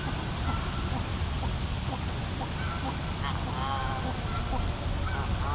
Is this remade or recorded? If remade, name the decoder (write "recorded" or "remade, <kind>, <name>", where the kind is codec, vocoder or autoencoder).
recorded